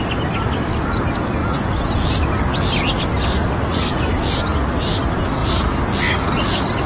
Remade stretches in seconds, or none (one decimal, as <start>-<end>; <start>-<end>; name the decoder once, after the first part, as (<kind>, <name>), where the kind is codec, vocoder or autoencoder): 4.5-5.0 (vocoder, BigVGAN v2)